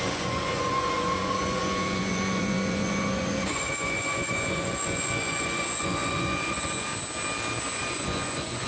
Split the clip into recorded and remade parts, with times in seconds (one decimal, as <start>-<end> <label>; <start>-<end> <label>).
0.0-6.9 remade; 6.9-7.6 recorded; 7.6-8.7 remade